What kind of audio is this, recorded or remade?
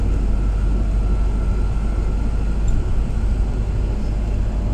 recorded